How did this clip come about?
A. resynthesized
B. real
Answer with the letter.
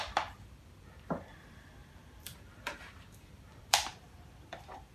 A